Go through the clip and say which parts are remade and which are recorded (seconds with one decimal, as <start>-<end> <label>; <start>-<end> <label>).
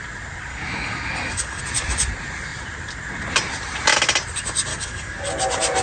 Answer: 0.0-0.5 recorded; 0.5-1.6 remade; 1.6-4.7 recorded; 4.7-5.3 remade; 5.3-5.8 recorded